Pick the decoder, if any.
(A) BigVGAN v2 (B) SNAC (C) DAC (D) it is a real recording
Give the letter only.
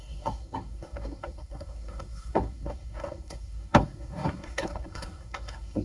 B